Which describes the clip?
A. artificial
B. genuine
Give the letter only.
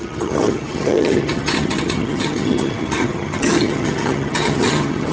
A